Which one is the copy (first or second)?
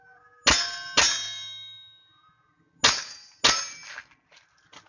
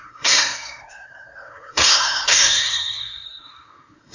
second